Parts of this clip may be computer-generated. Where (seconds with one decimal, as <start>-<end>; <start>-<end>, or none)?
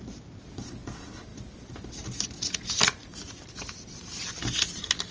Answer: none